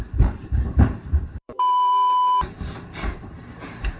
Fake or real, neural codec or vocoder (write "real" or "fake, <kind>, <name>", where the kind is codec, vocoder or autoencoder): fake, vocoder, BigVGAN v2